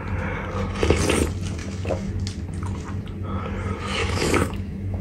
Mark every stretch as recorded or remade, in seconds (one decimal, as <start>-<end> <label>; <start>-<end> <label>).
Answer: 0.0-1.6 recorded; 1.6-2.1 remade; 2.1-4.0 recorded; 4.0-5.0 remade